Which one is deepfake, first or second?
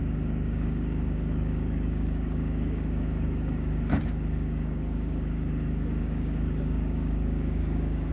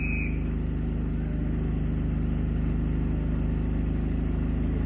first